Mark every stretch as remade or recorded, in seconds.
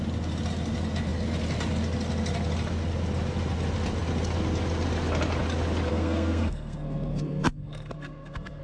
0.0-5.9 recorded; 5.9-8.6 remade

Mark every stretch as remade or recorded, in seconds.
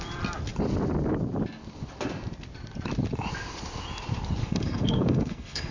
0.0-4.4 recorded; 4.4-5.7 remade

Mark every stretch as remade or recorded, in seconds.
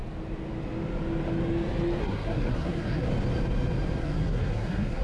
0.0-2.0 recorded; 2.0-3.1 remade; 3.1-4.0 recorded; 4.0-5.0 remade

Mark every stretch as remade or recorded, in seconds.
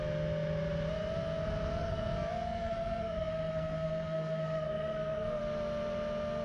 0.0-1.8 recorded; 1.8-5.4 remade; 5.4-6.4 recorded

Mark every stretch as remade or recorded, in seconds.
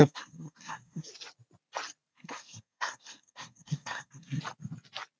0.0-1.1 remade; 1.1-2.1 recorded; 2.1-4.4 remade; 4.4-5.2 recorded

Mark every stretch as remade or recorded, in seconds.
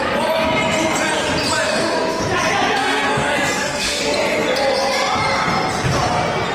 0.0-1.6 recorded; 1.6-2.2 remade; 2.2-2.8 recorded; 2.8-4.0 remade; 4.0-6.5 recorded